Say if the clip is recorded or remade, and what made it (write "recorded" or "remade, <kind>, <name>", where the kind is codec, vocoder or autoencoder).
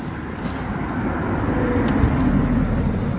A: recorded